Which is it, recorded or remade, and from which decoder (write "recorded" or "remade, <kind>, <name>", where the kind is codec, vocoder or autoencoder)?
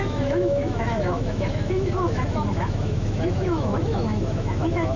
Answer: remade, autoencoder, DAC-VAE